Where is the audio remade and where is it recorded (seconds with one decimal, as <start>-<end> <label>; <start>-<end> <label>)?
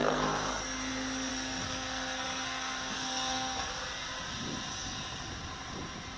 0.0-0.6 remade; 0.6-1.3 recorded; 1.3-3.7 remade; 3.7-6.2 recorded